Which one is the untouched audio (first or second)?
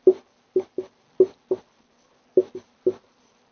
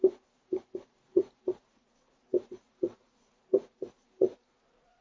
first